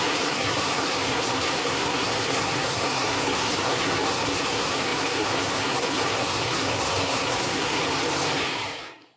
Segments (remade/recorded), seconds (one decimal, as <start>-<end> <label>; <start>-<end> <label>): 0.0-7.8 remade; 7.8-8.4 recorded; 8.4-9.2 remade